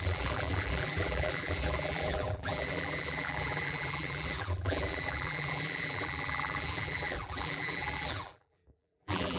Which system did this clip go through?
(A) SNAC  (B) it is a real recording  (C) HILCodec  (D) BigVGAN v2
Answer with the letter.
D